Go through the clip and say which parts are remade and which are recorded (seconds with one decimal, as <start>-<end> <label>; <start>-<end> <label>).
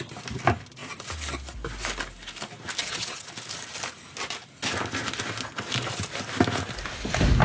0.0-2.8 recorded; 2.8-3.3 remade; 3.3-7.4 recorded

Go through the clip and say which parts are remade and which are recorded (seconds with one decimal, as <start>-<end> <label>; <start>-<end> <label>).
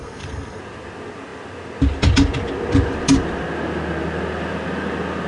0.0-0.6 remade; 0.6-5.3 recorded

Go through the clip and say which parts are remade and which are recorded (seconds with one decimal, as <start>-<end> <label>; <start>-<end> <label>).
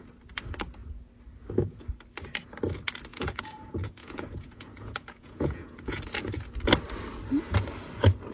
0.0-3.1 recorded; 3.1-6.0 remade; 6.0-8.3 recorded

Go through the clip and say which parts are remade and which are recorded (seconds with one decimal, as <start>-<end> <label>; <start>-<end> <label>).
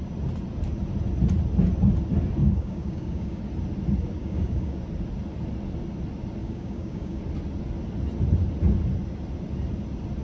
0.0-2.4 recorded; 2.4-3.4 remade; 3.4-4.2 recorded; 4.2-4.8 remade; 4.8-6.4 recorded; 6.4-7.2 remade; 7.2-10.2 recorded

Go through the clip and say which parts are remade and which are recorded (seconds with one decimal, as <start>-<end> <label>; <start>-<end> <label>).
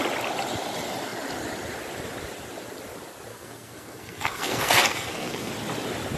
0.0-3.3 recorded; 3.3-5.5 remade; 5.5-6.2 recorded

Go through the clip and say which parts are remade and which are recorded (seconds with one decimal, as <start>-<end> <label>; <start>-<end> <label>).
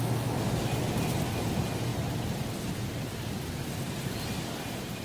0.0-5.0 recorded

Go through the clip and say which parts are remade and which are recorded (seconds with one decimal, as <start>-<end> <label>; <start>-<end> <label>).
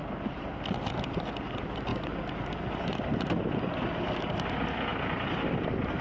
0.0-6.0 recorded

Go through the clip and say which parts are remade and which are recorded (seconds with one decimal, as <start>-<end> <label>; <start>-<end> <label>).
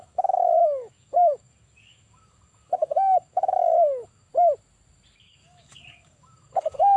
0.0-4.3 remade; 4.3-5.2 recorded; 5.2-7.0 remade